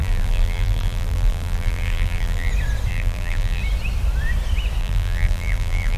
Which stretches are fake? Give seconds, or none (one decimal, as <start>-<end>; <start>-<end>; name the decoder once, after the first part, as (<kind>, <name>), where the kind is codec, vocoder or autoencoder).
0.0-2.5 (vocoder, BigVGAN v2); 2.9-3.6; 4.8-6.0